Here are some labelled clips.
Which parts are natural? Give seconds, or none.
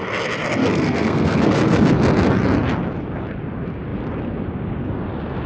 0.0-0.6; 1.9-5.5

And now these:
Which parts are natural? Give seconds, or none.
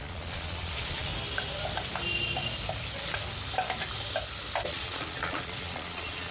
1.1-4.7